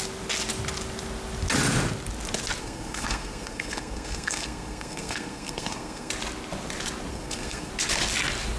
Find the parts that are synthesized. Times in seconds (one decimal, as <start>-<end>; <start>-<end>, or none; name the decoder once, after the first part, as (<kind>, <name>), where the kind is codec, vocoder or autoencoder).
2.6-6.1 (codec, SNAC); 7.1-7.7